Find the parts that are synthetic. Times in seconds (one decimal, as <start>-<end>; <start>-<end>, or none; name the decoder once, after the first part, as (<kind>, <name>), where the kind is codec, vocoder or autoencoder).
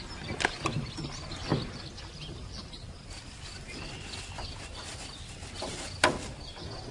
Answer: none